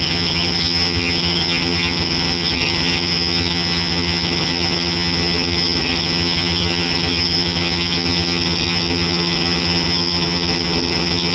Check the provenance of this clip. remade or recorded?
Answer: remade